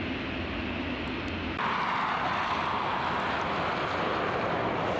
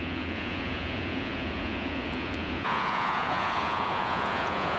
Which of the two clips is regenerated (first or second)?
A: second